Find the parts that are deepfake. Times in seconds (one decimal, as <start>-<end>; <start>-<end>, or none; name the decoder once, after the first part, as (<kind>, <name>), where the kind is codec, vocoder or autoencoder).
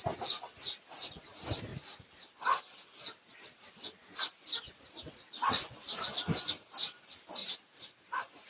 1.7-2.6 (vocoder, BigVGAN v2); 7.4-8.5